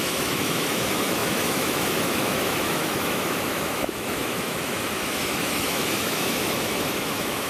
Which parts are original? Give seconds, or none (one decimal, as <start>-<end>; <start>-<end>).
none